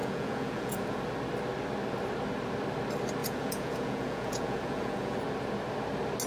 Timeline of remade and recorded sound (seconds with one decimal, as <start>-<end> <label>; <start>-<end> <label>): 0.0-1.0 remade; 1.0-3.2 recorded; 3.2-5.2 remade; 5.2-6.3 recorded